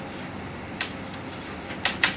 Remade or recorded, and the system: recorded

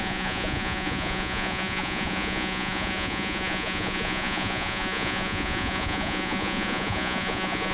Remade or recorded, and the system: remade, vocoder, Vocos